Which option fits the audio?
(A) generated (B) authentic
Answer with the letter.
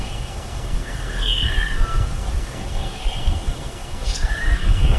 A